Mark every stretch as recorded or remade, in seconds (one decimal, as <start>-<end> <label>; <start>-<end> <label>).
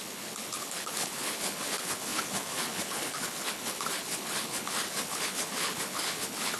0.0-6.6 remade